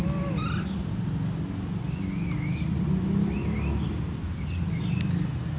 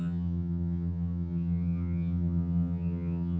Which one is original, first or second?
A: first